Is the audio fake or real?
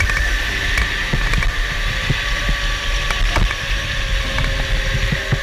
real